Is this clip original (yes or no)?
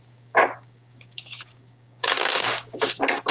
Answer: no